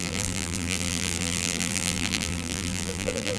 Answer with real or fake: fake